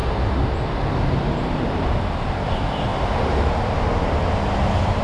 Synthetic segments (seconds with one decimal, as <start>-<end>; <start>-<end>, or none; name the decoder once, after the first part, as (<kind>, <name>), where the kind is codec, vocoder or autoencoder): 2.9-3.4 (vocoder, BigVGAN v2)